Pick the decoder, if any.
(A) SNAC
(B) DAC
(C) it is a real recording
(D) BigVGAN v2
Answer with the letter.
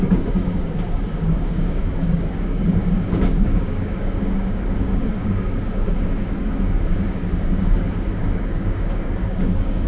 B